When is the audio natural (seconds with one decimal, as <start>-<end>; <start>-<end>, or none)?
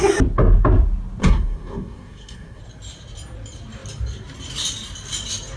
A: 0.0-1.2; 2.6-5.6